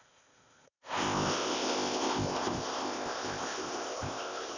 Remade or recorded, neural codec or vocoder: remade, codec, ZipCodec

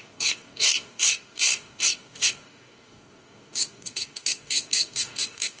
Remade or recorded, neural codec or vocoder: remade, codec, DAC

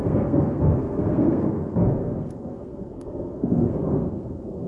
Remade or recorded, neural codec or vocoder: remade, codec, SNAC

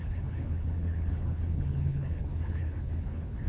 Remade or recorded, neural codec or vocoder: remade, codec, HILCodec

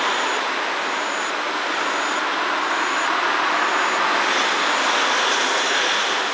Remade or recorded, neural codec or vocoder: recorded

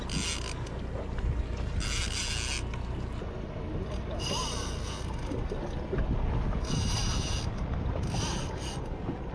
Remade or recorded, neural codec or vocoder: recorded